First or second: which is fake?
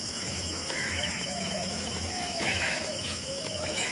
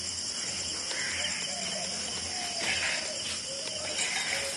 first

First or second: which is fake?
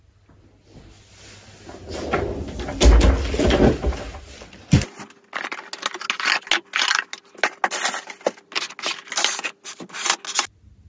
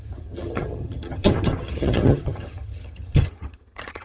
second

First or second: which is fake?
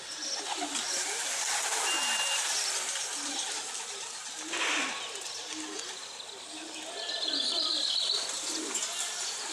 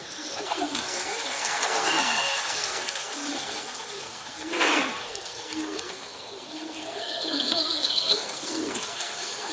second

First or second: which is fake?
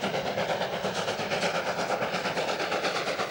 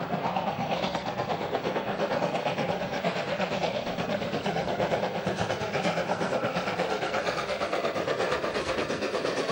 second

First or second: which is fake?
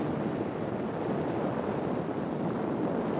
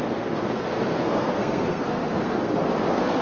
second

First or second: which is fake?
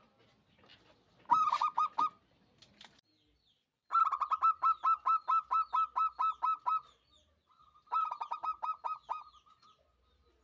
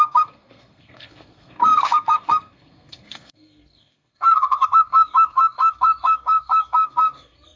second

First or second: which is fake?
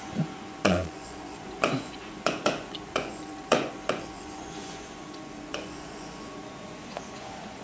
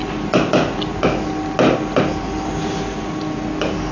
first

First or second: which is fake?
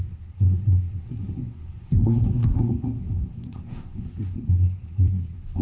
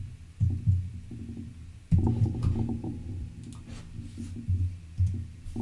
first